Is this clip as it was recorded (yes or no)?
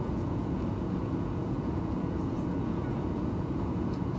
no